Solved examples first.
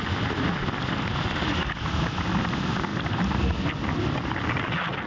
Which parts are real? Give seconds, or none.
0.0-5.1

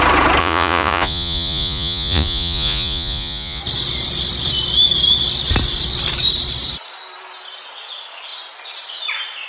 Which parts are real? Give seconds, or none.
0.0-0.4; 3.6-9.5

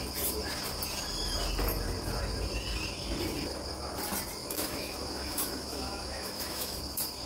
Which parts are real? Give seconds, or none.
0.0-4.4; 6.8-7.3

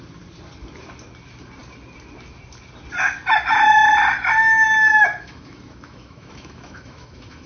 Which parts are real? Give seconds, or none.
0.0-4.9

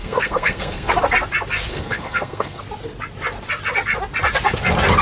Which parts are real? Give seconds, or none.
0.9-1.7; 2.6-5.0

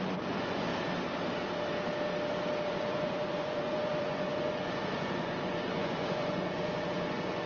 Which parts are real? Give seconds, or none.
0.7-2.7

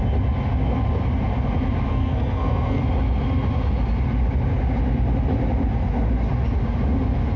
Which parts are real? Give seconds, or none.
0.0-1.9; 2.8-7.4

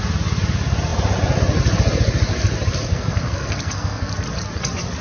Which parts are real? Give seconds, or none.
0.0-2.9; 4.1-5.0